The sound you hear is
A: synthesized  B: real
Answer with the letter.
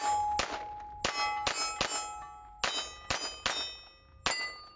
B